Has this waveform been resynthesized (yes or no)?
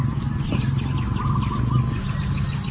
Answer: no